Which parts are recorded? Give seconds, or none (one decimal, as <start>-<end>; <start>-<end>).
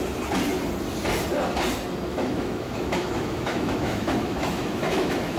0.0-2.1